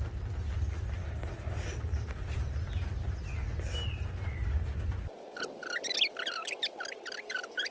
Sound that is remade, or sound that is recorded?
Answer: recorded